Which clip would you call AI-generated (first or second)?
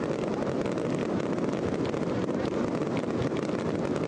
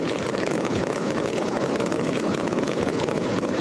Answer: second